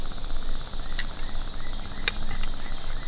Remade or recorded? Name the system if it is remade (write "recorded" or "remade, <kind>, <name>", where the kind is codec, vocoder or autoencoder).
recorded